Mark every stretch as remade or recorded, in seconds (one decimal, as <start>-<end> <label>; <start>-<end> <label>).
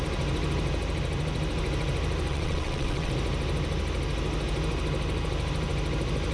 0.0-2.3 recorded; 2.3-3.1 remade; 3.1-6.3 recorded